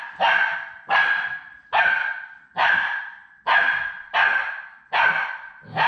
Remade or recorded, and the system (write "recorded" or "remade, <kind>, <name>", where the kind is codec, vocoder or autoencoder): recorded